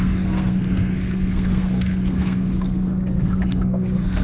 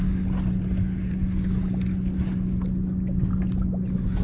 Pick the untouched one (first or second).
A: second